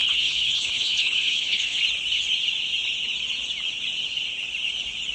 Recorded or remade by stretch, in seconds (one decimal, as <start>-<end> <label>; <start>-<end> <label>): 0.0-1.8 remade; 1.8-5.1 recorded